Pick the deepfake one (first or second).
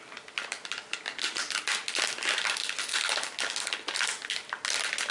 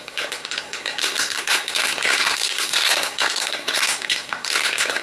second